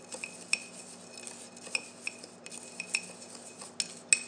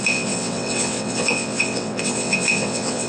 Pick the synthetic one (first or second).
second